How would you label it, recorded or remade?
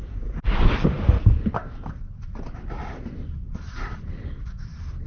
remade